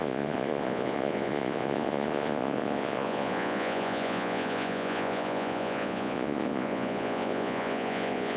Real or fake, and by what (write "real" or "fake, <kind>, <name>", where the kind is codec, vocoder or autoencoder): fake, vocoder, Vocos